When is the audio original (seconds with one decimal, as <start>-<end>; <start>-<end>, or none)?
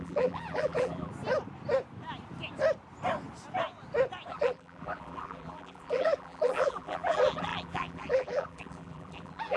1.1-4.3